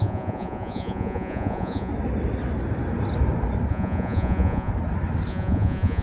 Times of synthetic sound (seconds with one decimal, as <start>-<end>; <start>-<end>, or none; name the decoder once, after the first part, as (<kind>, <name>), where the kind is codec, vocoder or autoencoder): 0.0-1.9 (vocoder, Vocos); 3.7-4.7; 5.3-6.0